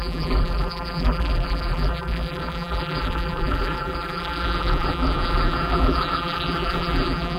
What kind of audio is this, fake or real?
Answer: fake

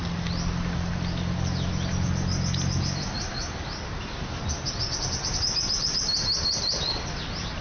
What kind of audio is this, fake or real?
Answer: real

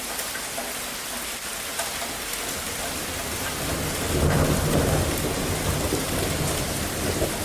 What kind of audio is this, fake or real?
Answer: real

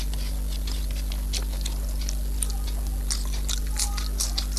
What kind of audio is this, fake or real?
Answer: real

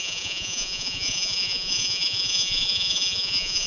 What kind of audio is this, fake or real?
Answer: fake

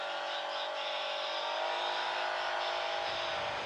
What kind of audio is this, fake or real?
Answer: real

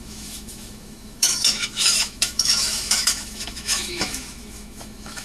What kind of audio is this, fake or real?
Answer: fake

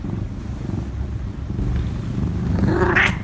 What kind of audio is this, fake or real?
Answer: real